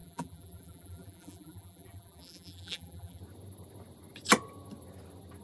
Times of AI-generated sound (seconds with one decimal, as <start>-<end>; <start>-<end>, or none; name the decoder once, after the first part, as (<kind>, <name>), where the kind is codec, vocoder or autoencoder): 0.0-3.2 (vocoder, BigVGAN v2)